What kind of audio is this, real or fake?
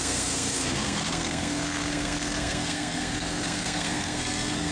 fake